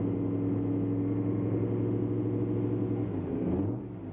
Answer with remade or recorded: recorded